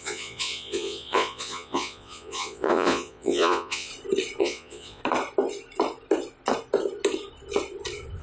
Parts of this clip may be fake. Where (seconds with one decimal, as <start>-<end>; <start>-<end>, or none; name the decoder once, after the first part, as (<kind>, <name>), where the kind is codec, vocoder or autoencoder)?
0.0-3.9 (vocoder, Vocos); 4.4-5.0

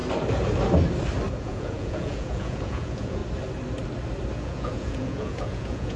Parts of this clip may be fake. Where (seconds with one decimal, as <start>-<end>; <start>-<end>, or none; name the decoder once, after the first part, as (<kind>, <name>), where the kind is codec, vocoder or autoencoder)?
1.4-3.2 (vocoder, Vocos); 4.4-6.0

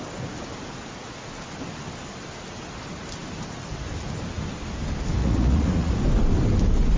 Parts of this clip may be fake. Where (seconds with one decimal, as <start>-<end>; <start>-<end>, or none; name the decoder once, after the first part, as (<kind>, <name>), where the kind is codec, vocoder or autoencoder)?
5.2-5.9 (vocoder, Vocos)

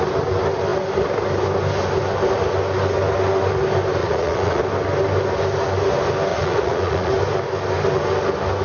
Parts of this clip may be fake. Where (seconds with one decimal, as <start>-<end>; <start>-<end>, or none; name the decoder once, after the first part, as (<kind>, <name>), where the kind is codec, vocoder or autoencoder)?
4.0-4.6 (vocoder, Vocos); 6.3-7.1

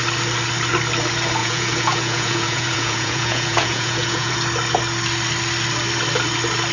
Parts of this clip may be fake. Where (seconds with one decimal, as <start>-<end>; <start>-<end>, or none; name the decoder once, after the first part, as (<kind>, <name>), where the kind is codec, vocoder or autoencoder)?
1.4-4.3 (vocoder, Vocos)